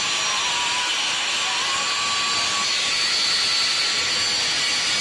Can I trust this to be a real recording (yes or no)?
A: yes